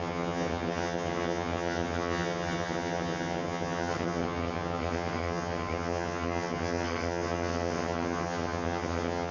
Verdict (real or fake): fake